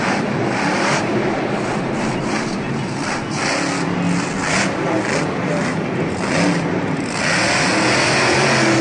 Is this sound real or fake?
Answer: real